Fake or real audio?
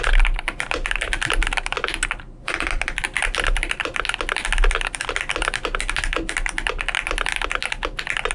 real